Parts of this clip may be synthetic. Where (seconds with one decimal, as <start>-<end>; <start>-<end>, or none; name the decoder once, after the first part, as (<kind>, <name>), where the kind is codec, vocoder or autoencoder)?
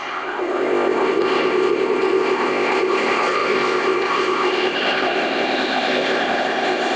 0.0-7.0 (codec, ZipCodec)